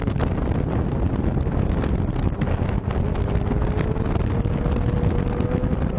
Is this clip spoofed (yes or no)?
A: no